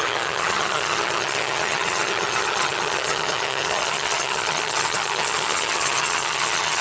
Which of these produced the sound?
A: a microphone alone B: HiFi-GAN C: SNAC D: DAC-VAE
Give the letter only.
B